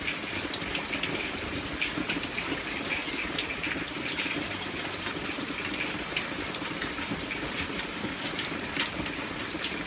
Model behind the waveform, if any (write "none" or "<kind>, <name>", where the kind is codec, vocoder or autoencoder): none